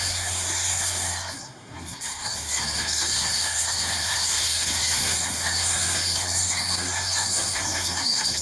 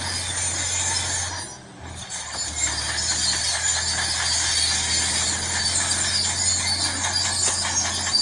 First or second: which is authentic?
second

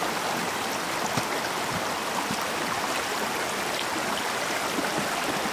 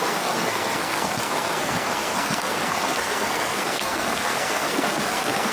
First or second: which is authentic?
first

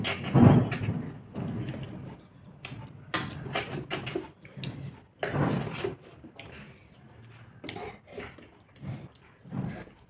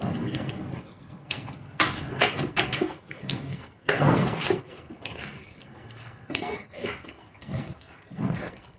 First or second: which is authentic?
first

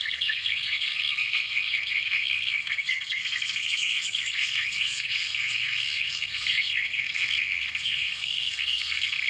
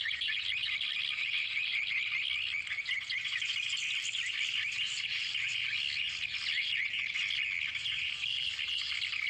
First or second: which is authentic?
second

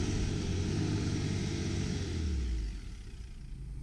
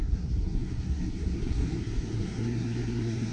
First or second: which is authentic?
first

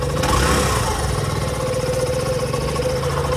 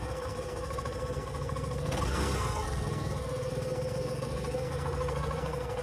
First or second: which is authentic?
first